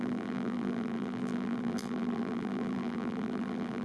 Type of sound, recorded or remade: remade